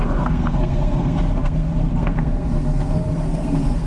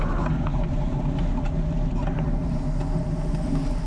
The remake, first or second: first